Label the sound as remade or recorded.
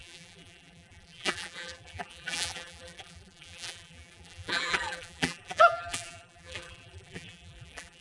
remade